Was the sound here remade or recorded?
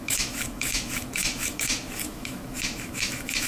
remade